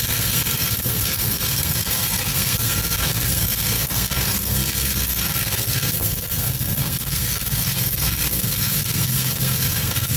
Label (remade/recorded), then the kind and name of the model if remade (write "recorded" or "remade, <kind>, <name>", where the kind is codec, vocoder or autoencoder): remade, codec, SNAC